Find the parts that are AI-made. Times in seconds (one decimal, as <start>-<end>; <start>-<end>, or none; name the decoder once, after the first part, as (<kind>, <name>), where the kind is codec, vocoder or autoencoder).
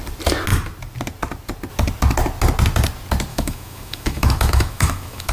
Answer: 3.3-5.3 (autoencoder, DAC-VAE)